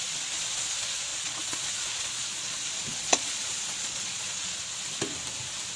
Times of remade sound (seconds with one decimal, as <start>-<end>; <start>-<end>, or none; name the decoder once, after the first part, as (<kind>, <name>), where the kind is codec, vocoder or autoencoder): 1.1-4.6 (vocoder, Vocos)